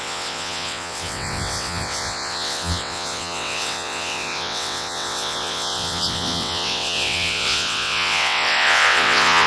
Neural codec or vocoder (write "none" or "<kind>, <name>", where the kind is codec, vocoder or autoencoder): vocoder, WaveNeXt